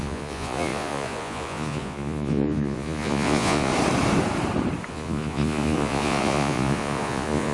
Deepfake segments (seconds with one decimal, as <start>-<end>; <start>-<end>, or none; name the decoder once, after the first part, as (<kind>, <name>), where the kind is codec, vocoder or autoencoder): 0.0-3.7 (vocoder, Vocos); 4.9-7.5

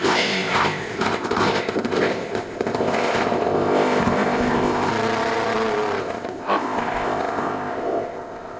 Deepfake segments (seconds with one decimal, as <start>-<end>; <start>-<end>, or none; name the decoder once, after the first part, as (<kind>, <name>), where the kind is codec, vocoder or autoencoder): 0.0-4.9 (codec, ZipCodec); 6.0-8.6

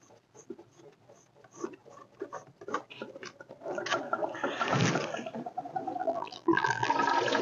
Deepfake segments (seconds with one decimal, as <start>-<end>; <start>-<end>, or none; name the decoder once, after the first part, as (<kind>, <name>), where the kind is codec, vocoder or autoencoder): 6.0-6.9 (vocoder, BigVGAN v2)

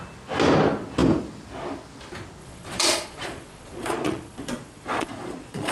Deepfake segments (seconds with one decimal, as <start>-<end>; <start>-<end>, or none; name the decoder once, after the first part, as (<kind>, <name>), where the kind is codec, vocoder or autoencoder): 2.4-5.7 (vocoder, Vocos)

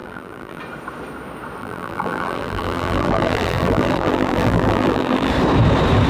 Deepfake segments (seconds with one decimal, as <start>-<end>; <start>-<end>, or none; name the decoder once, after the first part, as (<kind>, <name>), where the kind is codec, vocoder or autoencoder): 0.0-0.6 (vocoder, BigVGAN v2); 1.6-5.3

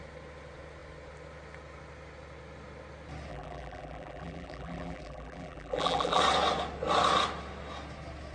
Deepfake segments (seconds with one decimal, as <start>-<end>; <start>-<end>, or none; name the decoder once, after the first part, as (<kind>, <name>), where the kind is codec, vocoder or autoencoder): 3.3-6.2 (vocoder, BigVGAN v2)

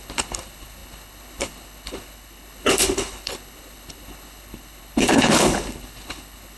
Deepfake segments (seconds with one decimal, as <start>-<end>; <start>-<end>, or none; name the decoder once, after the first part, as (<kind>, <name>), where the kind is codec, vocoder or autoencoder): 0.0-6.6 (codec, HILCodec)

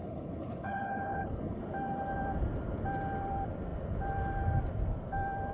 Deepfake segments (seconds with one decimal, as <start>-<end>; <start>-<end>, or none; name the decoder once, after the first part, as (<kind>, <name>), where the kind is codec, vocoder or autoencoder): 0.0-1.6 (codec, HILCodec)